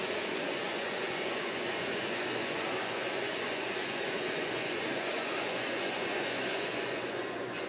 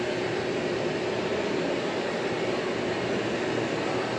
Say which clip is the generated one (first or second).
first